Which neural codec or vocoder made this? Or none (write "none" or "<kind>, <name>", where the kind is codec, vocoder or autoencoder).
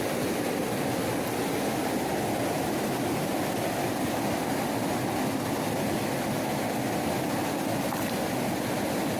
none